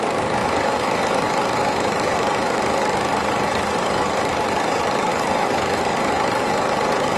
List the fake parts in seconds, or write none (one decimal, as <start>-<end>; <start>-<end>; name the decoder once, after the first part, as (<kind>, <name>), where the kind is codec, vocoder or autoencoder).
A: 0.0-7.2 (codec, DAC)